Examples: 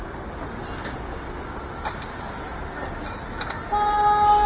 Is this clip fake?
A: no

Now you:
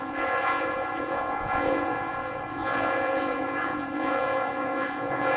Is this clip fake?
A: yes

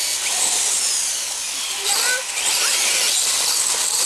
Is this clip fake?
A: no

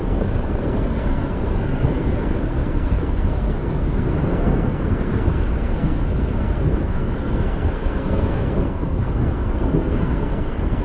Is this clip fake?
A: yes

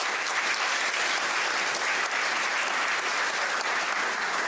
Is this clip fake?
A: no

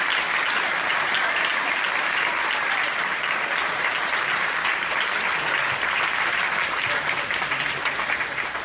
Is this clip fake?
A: no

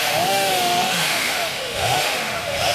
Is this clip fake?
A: yes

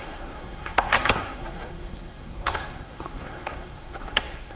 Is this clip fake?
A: yes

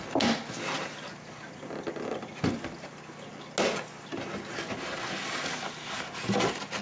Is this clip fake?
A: no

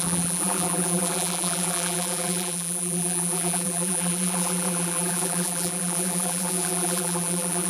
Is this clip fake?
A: yes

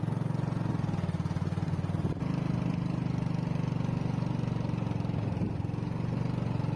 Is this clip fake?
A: no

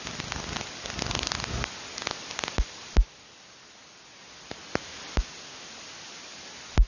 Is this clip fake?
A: no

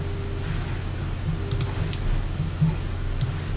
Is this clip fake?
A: no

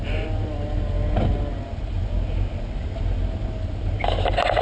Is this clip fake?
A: no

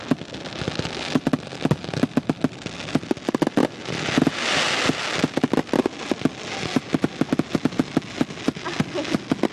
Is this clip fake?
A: no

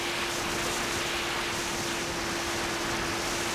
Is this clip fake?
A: no